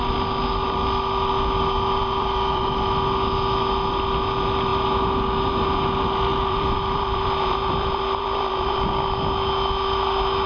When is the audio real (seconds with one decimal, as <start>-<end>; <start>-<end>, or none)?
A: 0.0-2.0; 2.6-6.3; 8.9-10.5